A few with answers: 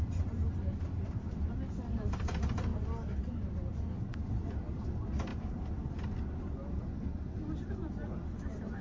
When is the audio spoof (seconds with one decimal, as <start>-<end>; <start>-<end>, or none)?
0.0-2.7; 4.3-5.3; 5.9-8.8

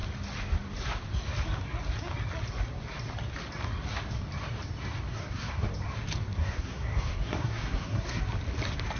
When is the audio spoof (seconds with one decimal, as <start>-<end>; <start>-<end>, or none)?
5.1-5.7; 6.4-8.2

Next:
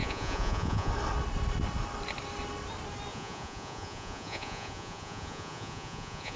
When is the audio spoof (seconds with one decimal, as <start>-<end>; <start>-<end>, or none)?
0.0-0.9; 3.1-6.4